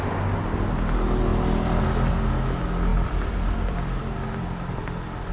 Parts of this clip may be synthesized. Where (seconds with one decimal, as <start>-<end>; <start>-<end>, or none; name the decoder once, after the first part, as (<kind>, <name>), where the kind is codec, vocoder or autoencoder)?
2.9-4.0 (vocoder, BigVGAN v2)